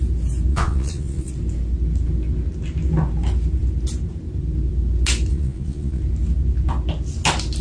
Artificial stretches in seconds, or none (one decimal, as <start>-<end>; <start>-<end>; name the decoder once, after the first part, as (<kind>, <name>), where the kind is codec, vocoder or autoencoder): 0.5-1.3 (vocoder, Vocos); 5.3-6.0